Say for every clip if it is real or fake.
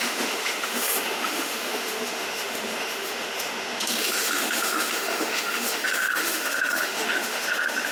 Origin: fake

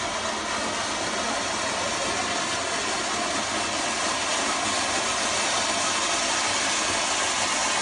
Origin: real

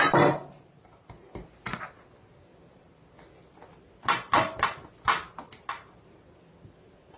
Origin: real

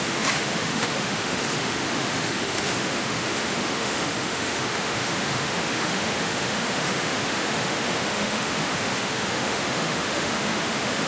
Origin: fake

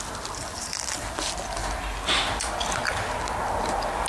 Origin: real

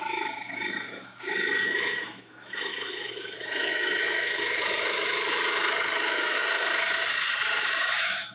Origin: fake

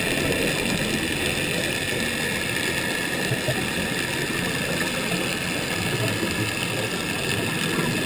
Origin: real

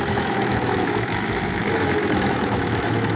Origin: fake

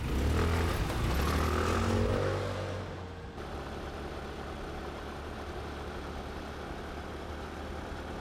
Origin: real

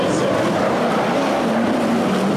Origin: real